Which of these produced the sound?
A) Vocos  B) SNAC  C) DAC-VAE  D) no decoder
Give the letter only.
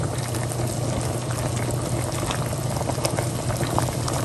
D